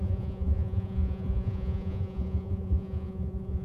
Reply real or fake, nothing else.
fake